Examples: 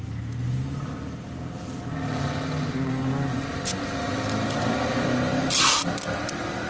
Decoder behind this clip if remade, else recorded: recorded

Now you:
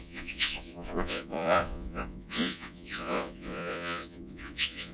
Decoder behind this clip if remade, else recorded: remade, vocoder, Vocos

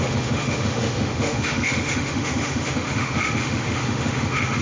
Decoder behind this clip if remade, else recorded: remade, autoencoder, DAC-VAE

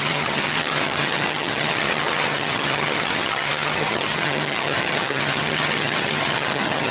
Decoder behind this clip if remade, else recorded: remade, vocoder, HiFi-GAN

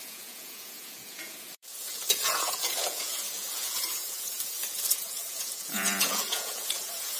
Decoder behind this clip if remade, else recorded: remade, vocoder, Vocos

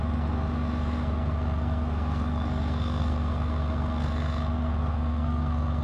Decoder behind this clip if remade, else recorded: remade, codec, SNAC